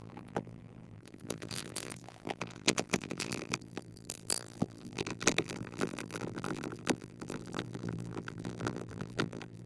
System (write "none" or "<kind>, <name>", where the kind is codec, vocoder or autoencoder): vocoder, BigVGAN v2